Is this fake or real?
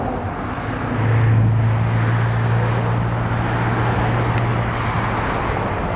real